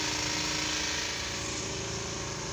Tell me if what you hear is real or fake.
real